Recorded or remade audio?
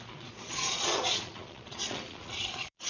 remade